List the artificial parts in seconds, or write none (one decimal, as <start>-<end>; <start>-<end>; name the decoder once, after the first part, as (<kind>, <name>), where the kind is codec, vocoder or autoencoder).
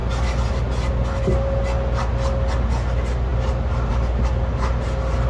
none